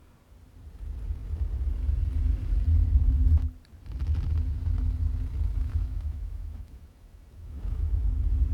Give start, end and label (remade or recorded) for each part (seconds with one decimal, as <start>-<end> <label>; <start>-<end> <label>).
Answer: 0.0-5.6 recorded; 5.6-8.0 remade; 8.0-8.5 recorded